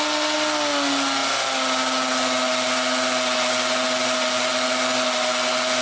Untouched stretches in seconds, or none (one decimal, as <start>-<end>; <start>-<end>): 0.0-5.8